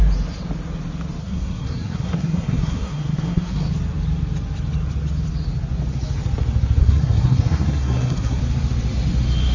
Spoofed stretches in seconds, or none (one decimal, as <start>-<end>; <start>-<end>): 1.2-3.7; 6.8-8.4